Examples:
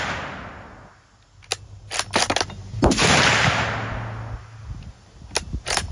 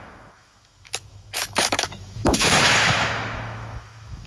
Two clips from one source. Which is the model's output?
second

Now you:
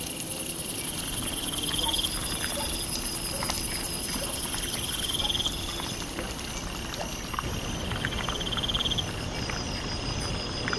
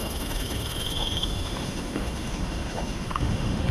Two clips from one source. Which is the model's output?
second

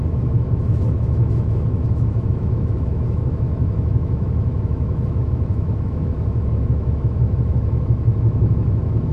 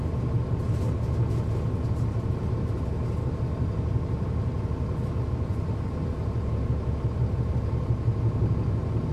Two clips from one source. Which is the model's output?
first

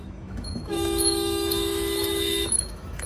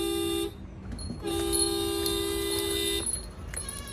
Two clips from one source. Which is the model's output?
first